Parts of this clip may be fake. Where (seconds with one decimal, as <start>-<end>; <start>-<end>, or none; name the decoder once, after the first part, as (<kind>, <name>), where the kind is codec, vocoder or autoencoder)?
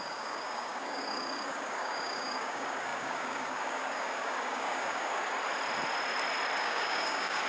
0.0-5.2 (codec, DAC); 6.6-7.5